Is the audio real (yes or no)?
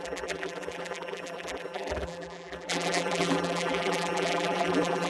no